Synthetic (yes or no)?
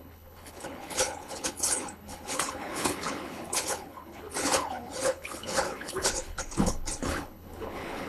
yes